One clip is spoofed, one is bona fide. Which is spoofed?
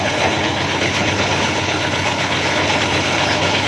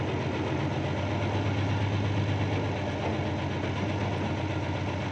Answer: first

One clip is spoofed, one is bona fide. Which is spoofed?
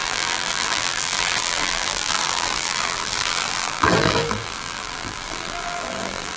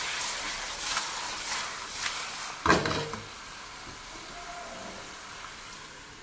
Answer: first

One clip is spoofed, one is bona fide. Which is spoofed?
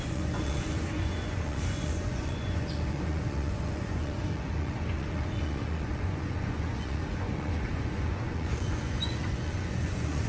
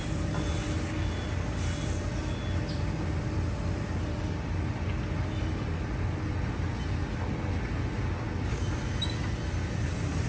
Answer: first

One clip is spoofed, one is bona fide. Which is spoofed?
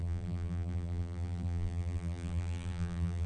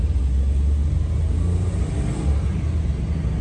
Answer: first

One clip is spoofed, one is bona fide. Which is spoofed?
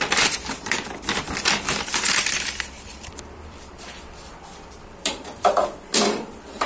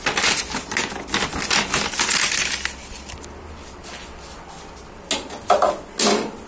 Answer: first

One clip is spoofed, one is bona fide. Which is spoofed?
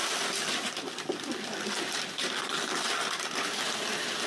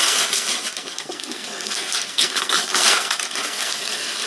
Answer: second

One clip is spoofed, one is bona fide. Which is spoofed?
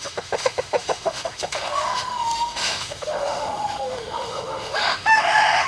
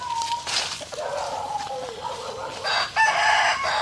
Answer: first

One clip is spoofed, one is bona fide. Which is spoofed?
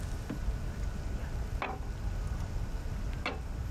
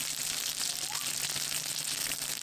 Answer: second